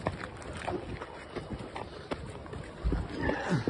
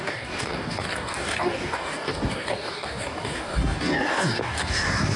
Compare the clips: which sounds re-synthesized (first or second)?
second